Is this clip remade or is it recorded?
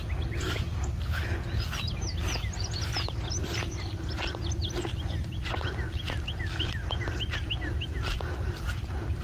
recorded